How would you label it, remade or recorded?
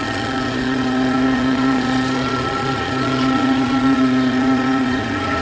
remade